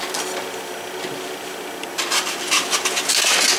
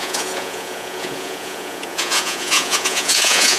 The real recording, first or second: first